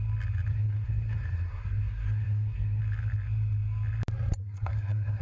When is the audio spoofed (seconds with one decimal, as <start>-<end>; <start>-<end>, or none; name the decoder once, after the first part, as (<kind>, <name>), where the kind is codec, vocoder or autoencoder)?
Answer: 0.5-2.8 (codec, SNAC); 4.4-5.2